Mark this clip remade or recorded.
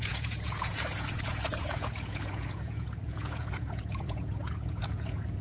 remade